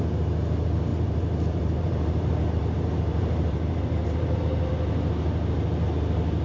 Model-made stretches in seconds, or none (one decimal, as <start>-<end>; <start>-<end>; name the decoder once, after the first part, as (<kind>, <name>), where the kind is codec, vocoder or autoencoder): 0.9-4.7 (vocoder, BigVGAN v2)